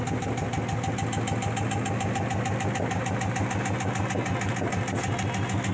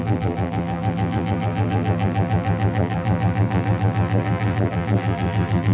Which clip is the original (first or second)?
first